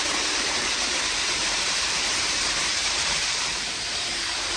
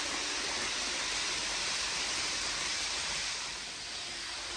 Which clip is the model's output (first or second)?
first